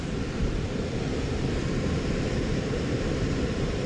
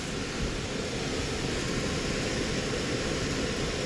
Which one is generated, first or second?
first